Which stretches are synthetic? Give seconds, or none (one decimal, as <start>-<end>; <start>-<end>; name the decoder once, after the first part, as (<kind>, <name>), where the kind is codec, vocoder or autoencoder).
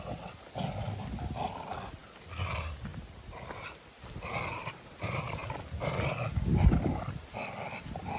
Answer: none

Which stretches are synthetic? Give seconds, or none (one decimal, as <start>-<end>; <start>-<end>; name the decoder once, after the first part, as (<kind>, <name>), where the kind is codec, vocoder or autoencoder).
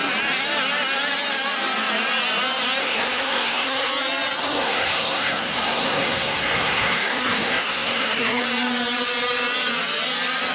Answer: 2.8-3.9 (codec, SNAC); 4.4-8.4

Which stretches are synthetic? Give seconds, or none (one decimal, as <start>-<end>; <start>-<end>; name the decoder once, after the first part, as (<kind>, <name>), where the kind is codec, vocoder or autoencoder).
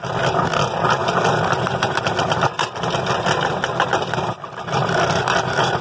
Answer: none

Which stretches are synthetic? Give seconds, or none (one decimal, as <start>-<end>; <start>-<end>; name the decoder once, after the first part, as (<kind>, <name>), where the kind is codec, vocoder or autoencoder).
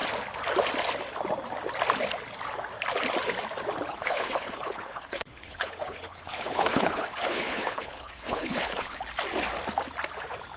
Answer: 3.9-9.0 (codec, HILCodec)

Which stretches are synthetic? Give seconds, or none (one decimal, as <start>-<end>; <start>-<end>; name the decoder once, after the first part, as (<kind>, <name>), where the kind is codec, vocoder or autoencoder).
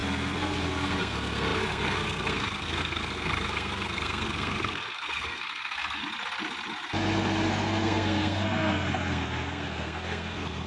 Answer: 0.0-6.0 (codec, SNAC); 7.5-10.7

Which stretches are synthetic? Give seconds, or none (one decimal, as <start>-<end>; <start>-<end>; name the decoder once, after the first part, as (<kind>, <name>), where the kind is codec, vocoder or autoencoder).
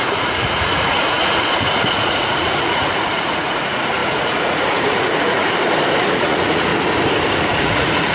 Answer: 0.0-5.4 (vocoder, Vocos); 6.0-6.7; 7.4-8.1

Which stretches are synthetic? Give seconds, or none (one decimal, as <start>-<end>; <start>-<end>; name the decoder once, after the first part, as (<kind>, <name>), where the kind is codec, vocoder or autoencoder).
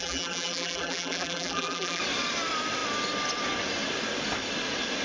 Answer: 0.0-2.0 (vocoder, BigVGAN v2)